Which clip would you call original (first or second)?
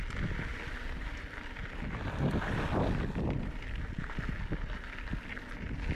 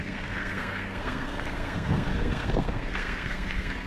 first